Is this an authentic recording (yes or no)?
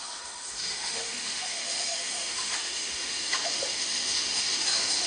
no